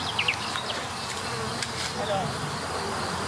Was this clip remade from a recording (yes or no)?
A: no